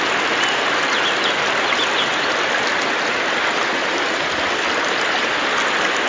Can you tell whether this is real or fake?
real